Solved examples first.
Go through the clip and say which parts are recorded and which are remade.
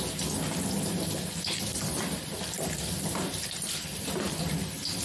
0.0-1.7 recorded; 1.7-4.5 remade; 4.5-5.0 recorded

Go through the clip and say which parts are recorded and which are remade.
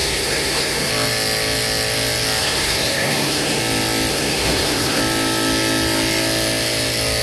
0.0-0.9 remade; 0.9-2.4 recorded; 2.4-3.6 remade; 3.6-4.1 recorded; 4.1-5.0 remade; 5.0-7.2 recorded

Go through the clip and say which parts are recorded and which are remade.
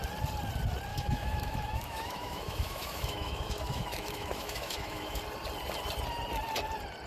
0.0-0.9 recorded; 0.9-5.2 remade; 5.2-7.1 recorded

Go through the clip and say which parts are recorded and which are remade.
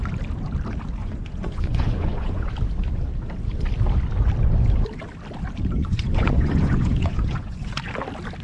0.0-1.0 recorded; 1.0-2.5 remade; 2.5-5.8 recorded; 5.8-7.7 remade; 7.7-8.4 recorded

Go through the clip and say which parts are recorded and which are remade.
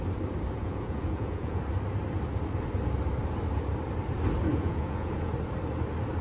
0.0-0.6 recorded; 0.6-1.6 remade; 1.6-4.5 recorded; 4.5-5.3 remade; 5.3-6.2 recorded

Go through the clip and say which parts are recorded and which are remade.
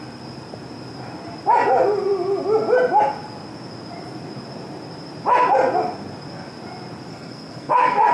0.0-7.1 recorded; 7.1-8.1 remade